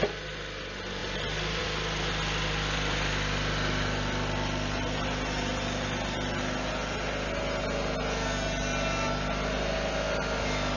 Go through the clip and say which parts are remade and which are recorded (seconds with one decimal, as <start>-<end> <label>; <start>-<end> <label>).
0.0-10.8 recorded